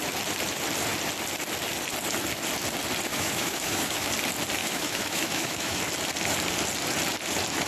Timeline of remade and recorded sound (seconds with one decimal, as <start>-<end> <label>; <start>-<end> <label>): 0.0-3.1 recorded; 3.1-4.1 remade; 4.1-4.6 recorded; 4.6-5.8 remade; 5.8-7.7 recorded